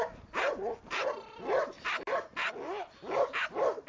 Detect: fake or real real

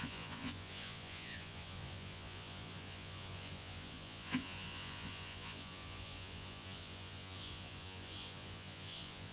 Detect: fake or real fake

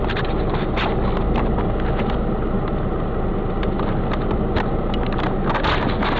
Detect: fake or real real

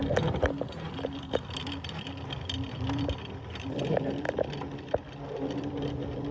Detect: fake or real real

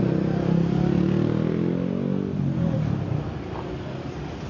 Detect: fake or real real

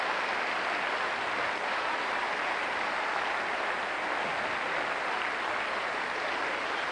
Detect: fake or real real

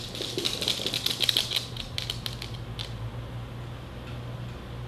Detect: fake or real real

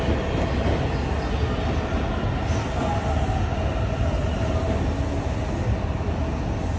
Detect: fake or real real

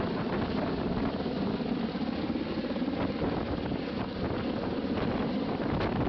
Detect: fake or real real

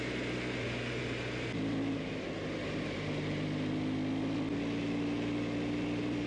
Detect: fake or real real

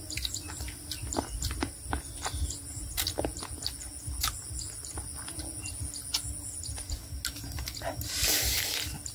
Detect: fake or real real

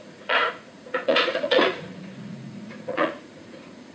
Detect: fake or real fake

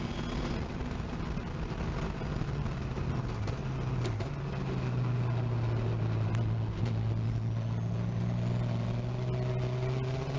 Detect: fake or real real